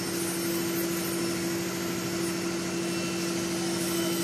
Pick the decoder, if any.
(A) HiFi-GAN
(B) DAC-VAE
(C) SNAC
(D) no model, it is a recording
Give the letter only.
D